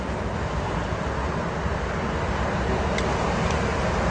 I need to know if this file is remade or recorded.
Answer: recorded